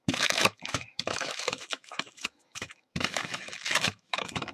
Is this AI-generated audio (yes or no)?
yes